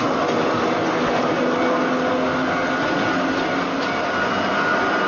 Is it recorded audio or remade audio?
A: recorded